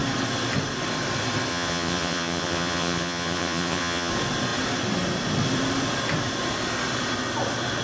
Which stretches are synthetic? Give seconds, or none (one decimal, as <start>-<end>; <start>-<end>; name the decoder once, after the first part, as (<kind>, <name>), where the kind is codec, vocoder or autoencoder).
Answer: 1.5-4.1 (vocoder, Vocos)